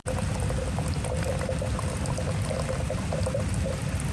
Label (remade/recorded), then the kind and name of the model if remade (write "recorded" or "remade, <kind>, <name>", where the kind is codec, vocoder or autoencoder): recorded